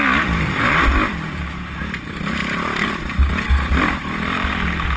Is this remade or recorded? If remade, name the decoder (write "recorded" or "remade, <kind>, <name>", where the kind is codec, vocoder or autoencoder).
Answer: remade, vocoder, BigVGAN v2